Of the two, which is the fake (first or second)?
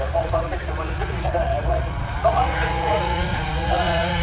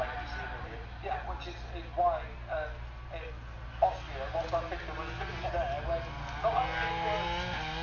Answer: first